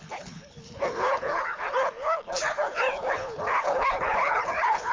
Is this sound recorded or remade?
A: remade